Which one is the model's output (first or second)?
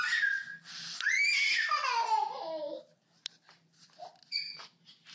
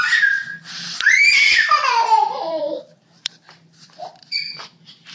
second